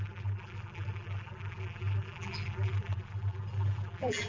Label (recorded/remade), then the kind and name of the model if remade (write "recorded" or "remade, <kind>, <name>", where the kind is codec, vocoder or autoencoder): remade, vocoder, BigVGAN v2